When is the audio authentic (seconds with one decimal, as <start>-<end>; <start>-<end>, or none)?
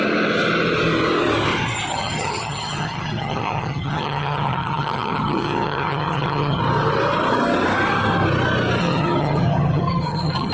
0.0-1.9; 6.6-8.8